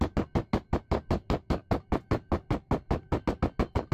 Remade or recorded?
recorded